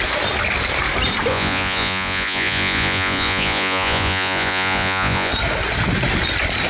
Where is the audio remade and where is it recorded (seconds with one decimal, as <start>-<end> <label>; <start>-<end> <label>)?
0.0-1.3 recorded; 1.3-5.3 remade; 5.3-6.7 recorded